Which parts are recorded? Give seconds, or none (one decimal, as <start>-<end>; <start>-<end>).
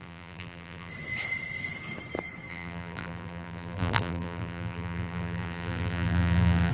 0.9-2.5